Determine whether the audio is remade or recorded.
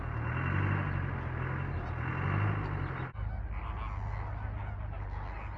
recorded